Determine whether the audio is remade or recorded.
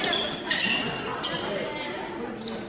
recorded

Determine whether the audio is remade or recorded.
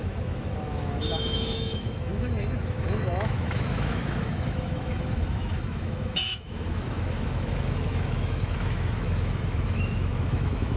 remade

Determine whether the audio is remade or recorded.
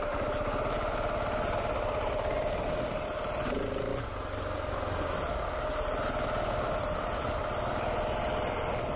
recorded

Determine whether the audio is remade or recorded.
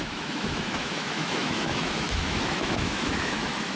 remade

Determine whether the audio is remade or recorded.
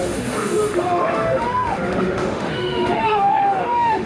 remade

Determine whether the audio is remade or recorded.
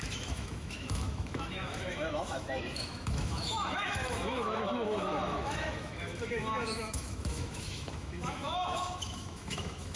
remade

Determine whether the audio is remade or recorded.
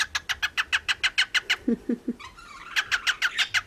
recorded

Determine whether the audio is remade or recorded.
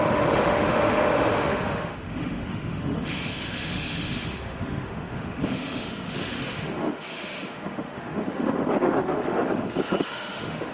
remade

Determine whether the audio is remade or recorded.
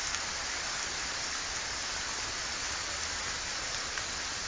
recorded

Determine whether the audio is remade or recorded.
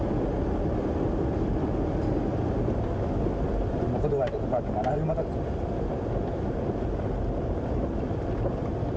recorded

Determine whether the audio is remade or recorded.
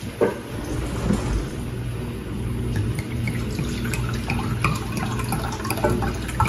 recorded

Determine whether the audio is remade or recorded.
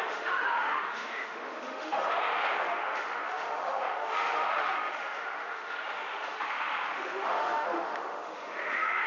remade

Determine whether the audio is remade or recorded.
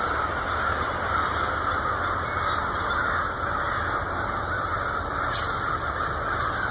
recorded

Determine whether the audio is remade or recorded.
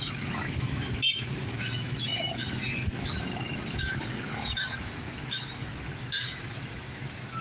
remade